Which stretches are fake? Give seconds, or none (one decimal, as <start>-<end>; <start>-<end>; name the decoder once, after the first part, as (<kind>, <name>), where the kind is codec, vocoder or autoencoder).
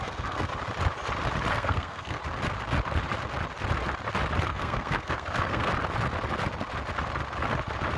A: 0.0-0.5 (codec, SNAC); 1.5-2.2; 4.4-5.7